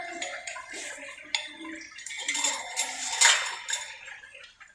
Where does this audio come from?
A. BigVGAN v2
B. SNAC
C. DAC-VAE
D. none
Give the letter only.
D